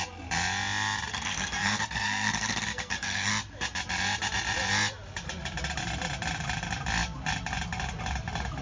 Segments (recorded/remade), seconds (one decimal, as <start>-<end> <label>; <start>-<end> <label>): 0.0-1.1 recorded; 1.1-3.3 remade; 3.3-8.6 recorded